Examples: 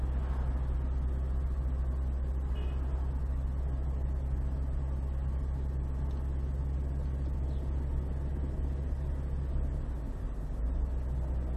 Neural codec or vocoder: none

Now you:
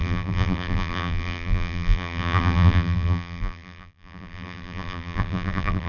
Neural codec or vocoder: vocoder, BigVGAN v2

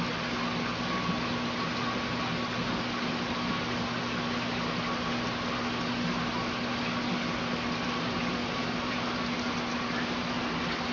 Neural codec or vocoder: none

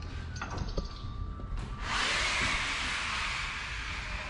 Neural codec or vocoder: none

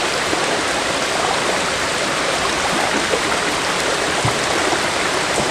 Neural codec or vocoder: vocoder, BigVGAN v2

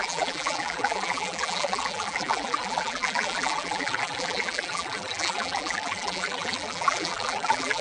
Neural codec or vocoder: vocoder, BigVGAN v2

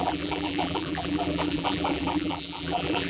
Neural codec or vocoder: vocoder, BigVGAN v2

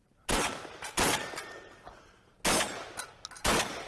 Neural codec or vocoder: none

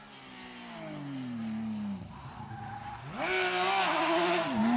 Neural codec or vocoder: none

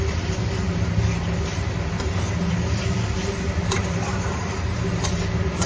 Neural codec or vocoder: vocoder, BigVGAN v2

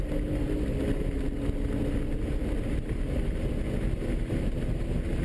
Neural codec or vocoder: none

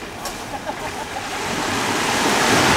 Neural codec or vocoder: none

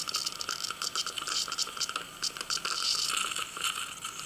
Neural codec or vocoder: none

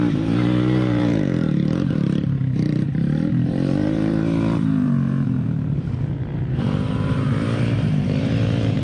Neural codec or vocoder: vocoder, BigVGAN v2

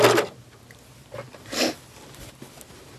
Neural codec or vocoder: none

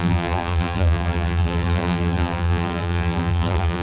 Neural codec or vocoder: vocoder, BigVGAN v2